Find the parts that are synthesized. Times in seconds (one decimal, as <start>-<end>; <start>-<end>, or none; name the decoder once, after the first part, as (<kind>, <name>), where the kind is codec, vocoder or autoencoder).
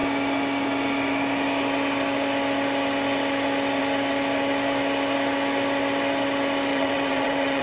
6.7-7.6 (vocoder, WaveNeXt)